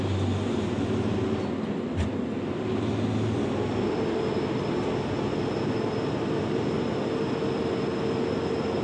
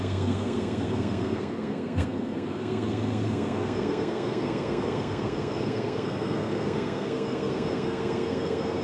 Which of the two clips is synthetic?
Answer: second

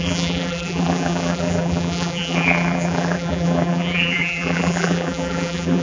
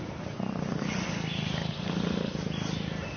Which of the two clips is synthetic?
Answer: first